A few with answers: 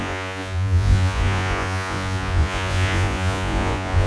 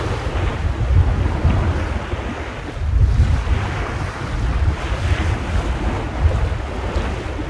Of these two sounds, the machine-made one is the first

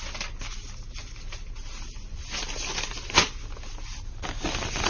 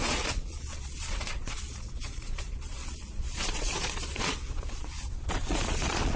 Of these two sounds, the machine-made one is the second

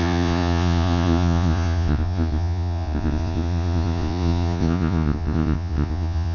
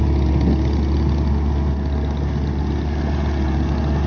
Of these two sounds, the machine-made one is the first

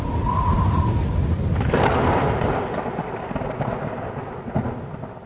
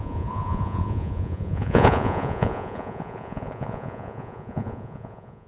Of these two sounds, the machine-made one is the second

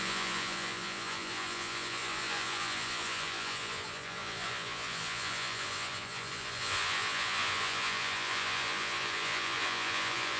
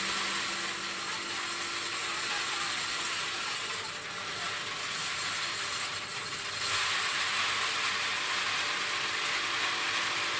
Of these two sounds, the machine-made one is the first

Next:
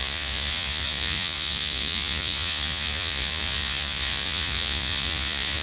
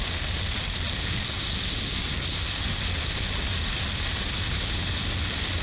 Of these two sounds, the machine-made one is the first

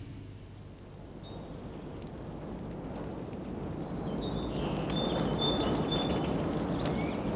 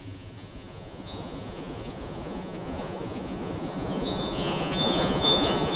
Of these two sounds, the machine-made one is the second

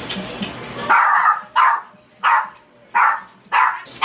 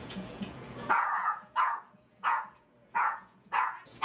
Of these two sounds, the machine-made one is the second